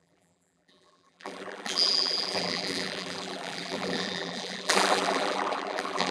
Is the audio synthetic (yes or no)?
yes